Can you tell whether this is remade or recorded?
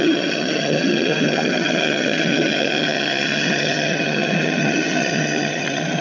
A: remade